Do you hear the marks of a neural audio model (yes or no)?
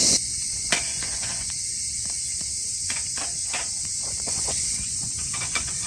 yes